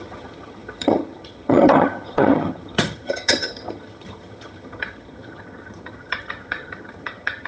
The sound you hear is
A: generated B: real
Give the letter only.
A